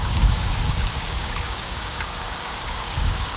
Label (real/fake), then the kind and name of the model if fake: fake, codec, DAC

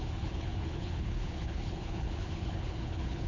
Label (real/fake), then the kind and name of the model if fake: fake, codec, HILCodec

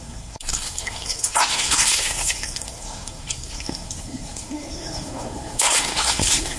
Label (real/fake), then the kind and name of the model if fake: fake, codec, SNAC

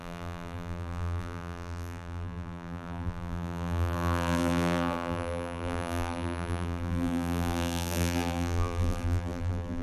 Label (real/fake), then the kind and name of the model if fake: fake, vocoder, BigVGAN v2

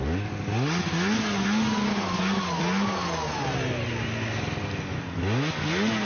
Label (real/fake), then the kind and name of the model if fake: real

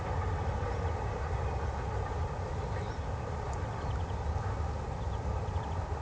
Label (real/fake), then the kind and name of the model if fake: real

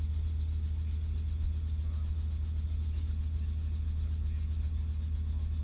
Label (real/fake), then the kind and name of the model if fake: real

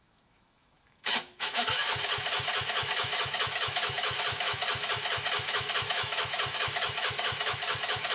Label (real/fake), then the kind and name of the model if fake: fake, autoencoder, DAC-VAE